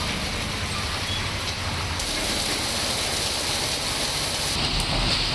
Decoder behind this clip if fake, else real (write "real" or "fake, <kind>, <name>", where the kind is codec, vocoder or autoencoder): real